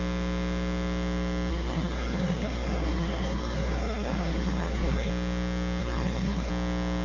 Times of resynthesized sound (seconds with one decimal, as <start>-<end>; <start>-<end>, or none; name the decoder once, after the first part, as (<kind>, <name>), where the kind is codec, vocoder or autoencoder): 1.5-5.1 (codec, SNAC); 5.8-6.5